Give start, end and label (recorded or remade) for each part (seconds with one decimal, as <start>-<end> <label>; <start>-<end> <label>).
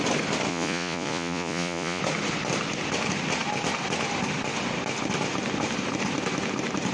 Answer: 0.0-0.5 recorded; 0.5-2.0 remade; 2.0-6.9 recorded